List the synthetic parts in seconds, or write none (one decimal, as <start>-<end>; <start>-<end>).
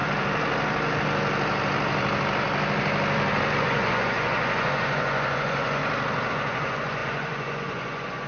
3.6-5.8; 6.3-8.3